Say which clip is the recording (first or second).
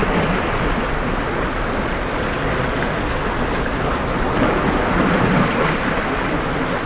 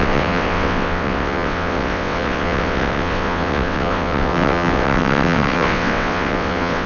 first